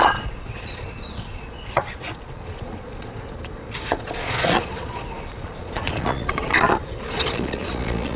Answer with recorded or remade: remade